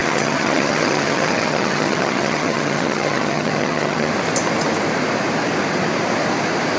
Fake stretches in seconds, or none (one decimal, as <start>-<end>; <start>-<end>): 0.0-4.1